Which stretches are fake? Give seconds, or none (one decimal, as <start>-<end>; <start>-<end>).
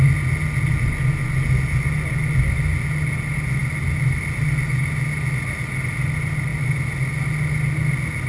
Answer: none